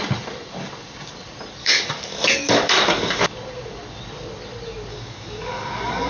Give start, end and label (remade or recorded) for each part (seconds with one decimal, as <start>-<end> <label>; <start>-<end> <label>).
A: 0.0-1.6 recorded; 1.6-3.2 remade; 3.2-4.9 recorded; 4.9-6.1 remade